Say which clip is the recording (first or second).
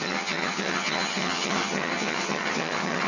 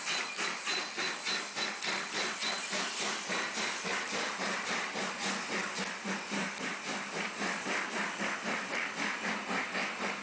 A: second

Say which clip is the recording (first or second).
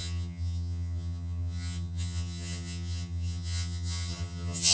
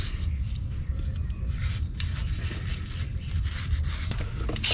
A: second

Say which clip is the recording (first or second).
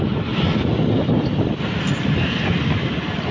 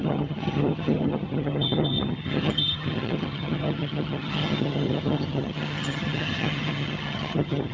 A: first